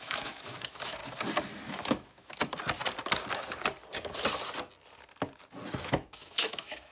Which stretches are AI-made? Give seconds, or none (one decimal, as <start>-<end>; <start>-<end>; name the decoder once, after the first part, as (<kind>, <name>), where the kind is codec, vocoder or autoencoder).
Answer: 0.0-1.0 (autoencoder, DAC-VAE); 1.7-2.4; 5.8-6.9